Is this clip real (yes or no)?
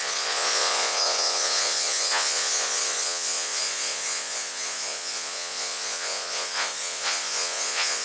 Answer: no